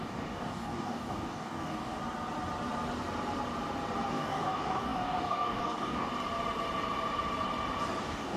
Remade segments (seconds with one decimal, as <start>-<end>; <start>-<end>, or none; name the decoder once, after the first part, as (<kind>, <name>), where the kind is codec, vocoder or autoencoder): 0.0-2.0 (codec, DAC); 4.1-6.1; 8.0-8.4